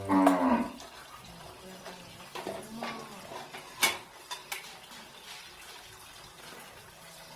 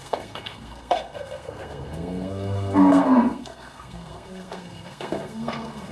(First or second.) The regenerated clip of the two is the second